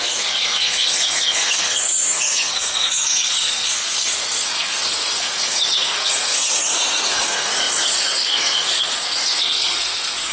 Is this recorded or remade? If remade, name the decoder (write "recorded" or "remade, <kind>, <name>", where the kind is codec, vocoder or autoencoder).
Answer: remade, codec, SNAC